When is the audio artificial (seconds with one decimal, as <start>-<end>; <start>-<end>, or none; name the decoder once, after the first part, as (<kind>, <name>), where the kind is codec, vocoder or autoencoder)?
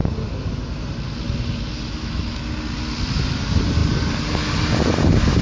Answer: none